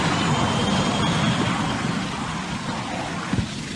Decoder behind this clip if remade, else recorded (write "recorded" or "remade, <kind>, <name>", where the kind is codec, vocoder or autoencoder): recorded